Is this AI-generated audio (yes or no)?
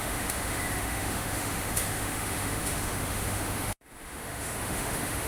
yes